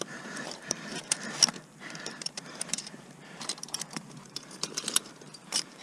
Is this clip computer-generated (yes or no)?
yes